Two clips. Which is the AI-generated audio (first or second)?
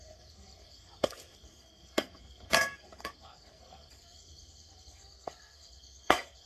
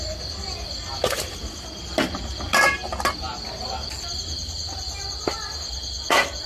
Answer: first